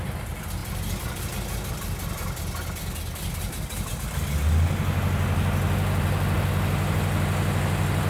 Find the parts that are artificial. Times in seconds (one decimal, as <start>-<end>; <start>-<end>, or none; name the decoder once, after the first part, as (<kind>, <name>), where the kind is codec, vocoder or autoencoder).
none